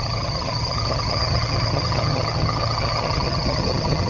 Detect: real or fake fake